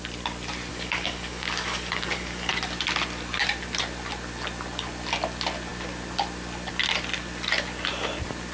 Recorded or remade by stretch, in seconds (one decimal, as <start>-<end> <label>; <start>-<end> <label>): 0.0-0.7 recorded; 0.7-2.5 remade; 2.5-8.5 recorded